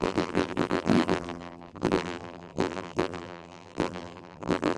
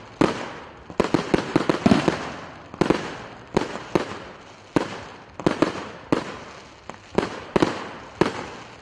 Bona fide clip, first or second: second